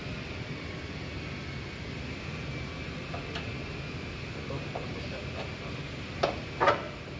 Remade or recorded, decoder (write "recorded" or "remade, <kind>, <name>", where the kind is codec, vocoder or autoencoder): recorded